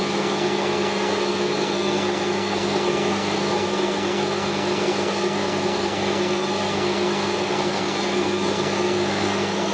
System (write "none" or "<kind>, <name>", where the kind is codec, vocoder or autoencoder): codec, SNAC